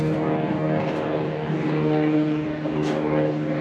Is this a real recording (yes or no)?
no